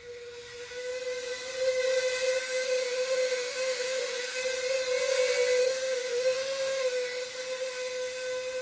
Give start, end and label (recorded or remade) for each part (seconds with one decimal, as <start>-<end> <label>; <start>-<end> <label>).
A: 0.0-0.9 remade; 0.9-2.4 recorded; 2.4-4.4 remade; 4.4-5.6 recorded; 5.6-8.6 remade